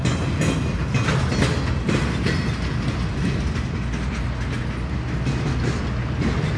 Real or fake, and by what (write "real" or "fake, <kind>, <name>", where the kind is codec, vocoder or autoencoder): real